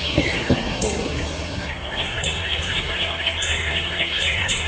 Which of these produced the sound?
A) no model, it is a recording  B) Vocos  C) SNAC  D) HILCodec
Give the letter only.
C